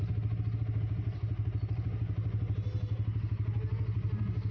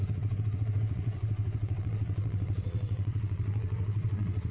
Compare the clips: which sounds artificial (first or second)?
second